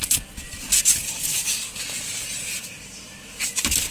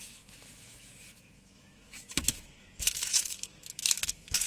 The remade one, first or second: second